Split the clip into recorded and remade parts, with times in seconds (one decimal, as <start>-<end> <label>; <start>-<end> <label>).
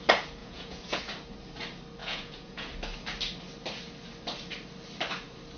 0.0-0.4 recorded; 0.4-1.0 remade; 1.0-2.0 recorded; 2.0-2.7 remade; 2.7-5.6 recorded